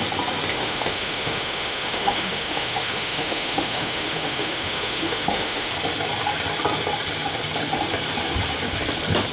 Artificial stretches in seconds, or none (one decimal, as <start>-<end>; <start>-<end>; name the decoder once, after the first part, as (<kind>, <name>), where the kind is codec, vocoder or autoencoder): 0.5-5.7 (autoencoder, DAC-VAE)